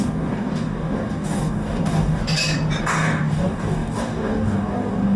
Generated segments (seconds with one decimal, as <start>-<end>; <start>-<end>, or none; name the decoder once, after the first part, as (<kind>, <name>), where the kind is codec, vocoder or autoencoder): 0.0-2.2 (codec, DAC); 2.8-5.2